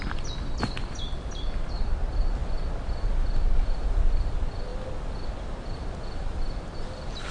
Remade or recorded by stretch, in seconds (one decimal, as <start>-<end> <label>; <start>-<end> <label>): 0.0-7.3 recorded